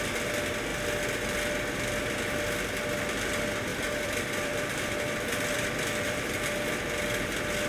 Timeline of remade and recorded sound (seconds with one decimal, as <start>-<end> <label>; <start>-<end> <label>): 0.0-3.7 recorded; 3.7-6.8 remade; 6.8-7.7 recorded